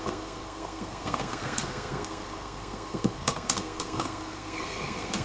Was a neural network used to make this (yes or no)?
yes